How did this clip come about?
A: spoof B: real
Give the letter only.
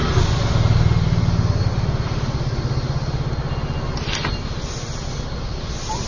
B